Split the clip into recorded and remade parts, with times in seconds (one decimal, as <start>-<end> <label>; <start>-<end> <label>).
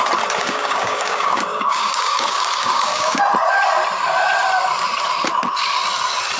0.0-0.4 recorded; 0.4-3.2 remade; 3.2-6.4 recorded